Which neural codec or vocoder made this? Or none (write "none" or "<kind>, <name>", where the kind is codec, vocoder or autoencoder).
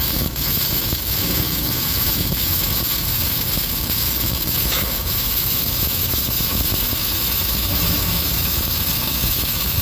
autoencoder, DAC-VAE